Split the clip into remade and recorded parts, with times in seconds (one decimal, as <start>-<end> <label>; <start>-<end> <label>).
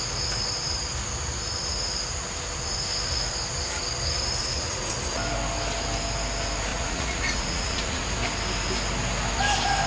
0.0-4.4 recorded; 4.4-4.9 remade; 4.9-6.7 recorded; 6.7-8.0 remade; 8.0-9.9 recorded